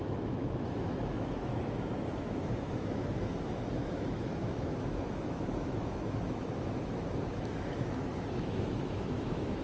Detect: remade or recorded remade